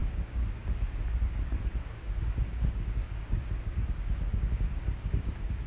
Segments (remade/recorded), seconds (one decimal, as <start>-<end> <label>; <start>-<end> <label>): 0.0-5.7 remade